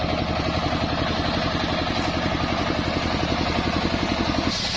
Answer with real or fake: real